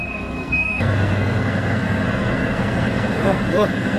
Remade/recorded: remade